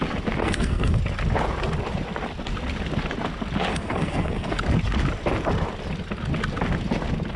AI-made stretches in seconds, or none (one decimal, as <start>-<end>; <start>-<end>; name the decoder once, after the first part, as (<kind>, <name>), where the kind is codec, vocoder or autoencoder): 0.4-1.0 (codec, SNAC); 3.7-4.6